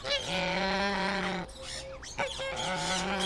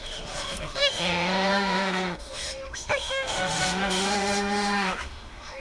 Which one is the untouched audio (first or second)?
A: first